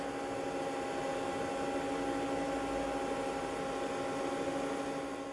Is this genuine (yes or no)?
yes